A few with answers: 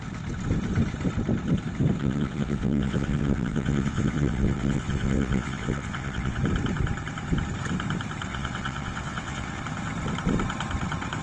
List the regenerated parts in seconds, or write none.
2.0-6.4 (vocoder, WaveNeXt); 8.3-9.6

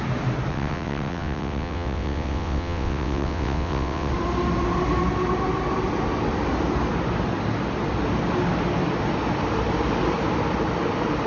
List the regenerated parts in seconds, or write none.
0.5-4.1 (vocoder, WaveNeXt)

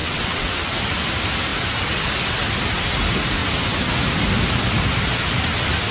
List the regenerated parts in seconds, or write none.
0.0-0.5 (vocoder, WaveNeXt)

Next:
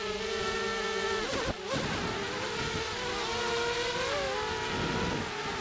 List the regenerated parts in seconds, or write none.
none

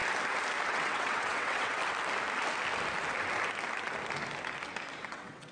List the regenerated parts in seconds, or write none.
0.7-1.8 (vocoder, WaveNeXt); 5.1-5.5

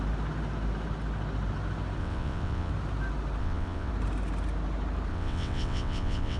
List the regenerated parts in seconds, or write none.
2.0-2.7 (vocoder, WaveNeXt); 3.4-3.9; 5.1-6.4